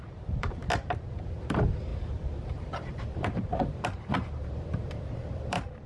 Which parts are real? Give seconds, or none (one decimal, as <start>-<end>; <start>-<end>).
0.6-1.4